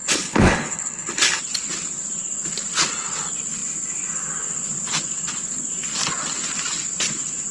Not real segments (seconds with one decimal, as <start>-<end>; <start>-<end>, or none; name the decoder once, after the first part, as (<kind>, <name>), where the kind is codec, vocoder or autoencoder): 0.0-1.4 (codec, HILCodec)